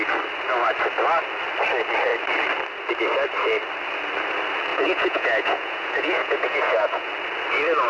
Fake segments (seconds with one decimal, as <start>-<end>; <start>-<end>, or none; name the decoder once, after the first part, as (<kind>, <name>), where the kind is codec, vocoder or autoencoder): 4.7-7.1 (vocoder, Vocos)